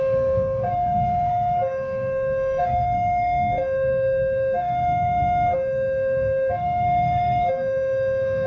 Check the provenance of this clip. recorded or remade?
remade